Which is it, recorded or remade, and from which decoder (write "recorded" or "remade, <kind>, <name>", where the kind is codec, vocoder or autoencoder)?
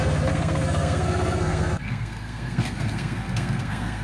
remade, codec, SNAC